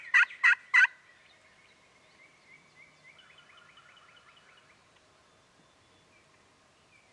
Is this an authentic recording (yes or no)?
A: yes